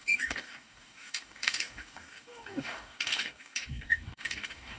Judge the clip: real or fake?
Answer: fake